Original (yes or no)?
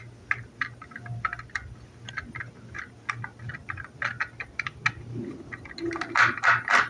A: yes